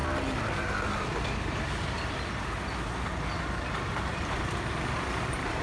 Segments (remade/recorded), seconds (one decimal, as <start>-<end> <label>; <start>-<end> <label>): 0.0-4.1 recorded; 4.1-5.6 remade